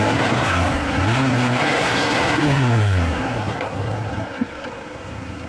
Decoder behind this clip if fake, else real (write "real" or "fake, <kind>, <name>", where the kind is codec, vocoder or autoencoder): fake, codec, SNAC